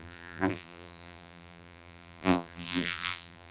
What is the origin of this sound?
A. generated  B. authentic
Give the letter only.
A